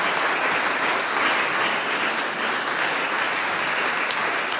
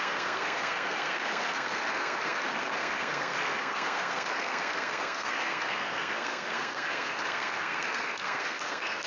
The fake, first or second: second